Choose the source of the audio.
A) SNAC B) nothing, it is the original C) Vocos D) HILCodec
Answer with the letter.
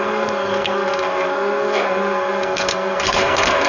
A